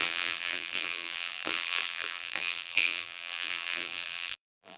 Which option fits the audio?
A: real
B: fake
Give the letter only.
B